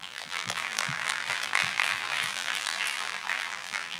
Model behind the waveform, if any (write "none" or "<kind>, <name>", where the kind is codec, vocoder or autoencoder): vocoder, BigVGAN v2